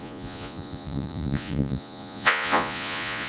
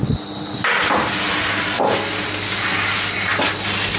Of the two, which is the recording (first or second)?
second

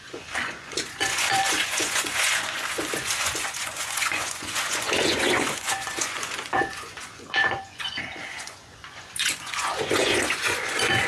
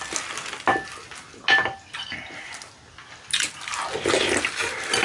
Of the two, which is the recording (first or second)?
second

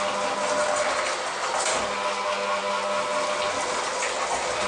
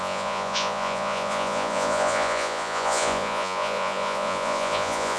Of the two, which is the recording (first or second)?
first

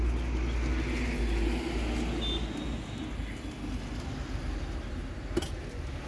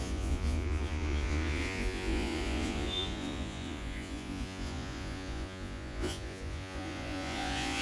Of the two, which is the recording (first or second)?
first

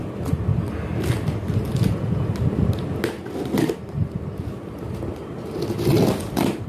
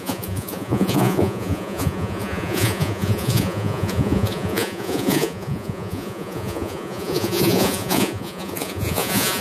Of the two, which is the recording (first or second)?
first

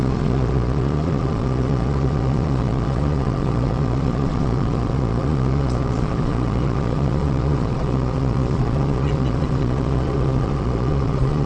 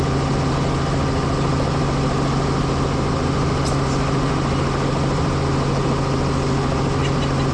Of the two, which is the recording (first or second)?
second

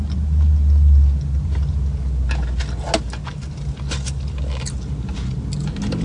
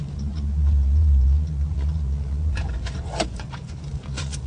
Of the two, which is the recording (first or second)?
first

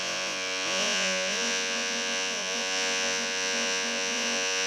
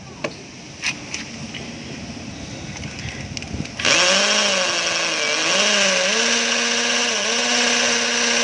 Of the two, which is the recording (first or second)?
second